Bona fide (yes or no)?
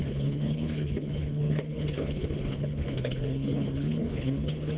no